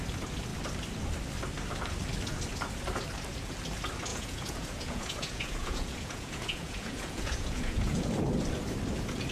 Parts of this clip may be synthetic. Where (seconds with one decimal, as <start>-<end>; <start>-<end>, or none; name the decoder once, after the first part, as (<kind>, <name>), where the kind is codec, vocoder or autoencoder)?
4.1-8.0 (vocoder, Vocos)